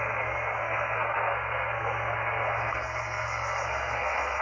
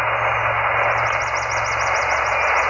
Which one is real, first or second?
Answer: second